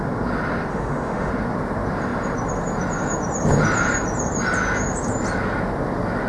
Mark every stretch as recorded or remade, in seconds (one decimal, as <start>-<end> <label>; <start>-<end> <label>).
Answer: 0.0-0.7 recorded; 0.7-1.3 remade; 1.3-6.3 recorded